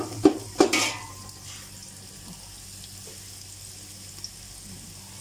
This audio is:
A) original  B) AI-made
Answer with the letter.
A